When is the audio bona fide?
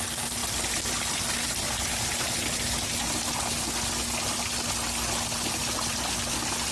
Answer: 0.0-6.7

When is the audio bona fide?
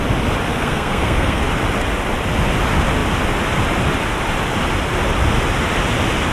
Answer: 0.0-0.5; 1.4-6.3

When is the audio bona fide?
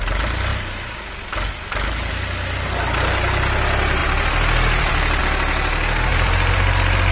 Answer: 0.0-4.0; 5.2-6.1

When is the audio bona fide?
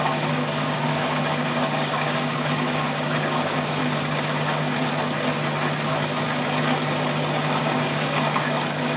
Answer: 3.8-7.6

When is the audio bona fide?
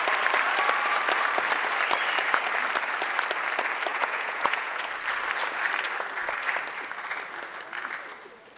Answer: 0.0-3.9; 4.8-8.6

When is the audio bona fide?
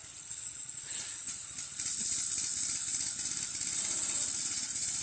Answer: 1.4-4.4